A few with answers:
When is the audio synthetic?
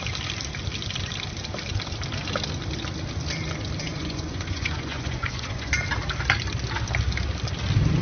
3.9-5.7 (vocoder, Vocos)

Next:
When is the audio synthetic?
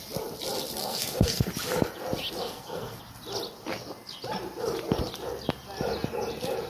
0.8-1.5 (codec, SNAC); 2.4-3.0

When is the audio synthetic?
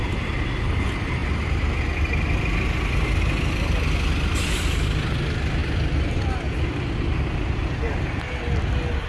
none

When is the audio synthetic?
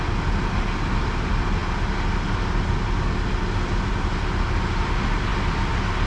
none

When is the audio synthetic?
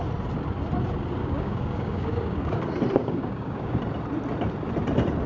1.2-2.6 (codec, DAC); 3.0-3.8